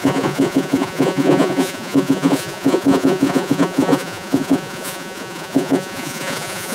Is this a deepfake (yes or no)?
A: yes